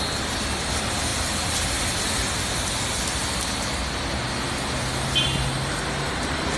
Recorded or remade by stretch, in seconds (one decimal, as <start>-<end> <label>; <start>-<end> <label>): 0.0-1.1 recorded; 1.1-1.8 remade; 1.8-6.6 recorded